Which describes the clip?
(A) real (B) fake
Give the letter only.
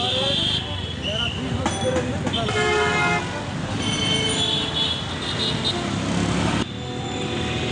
A